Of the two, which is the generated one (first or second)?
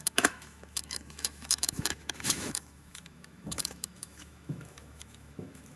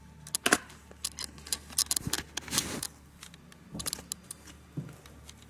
first